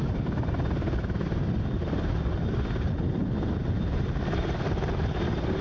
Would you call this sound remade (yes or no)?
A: no